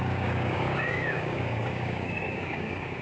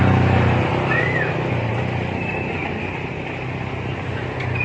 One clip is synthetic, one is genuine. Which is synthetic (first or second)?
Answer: first